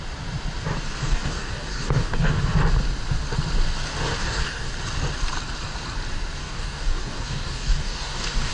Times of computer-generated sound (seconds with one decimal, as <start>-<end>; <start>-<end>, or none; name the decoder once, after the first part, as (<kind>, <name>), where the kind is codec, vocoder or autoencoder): 1.0-2.4 (codec, DAC); 4.2-4.7; 6.4-8.5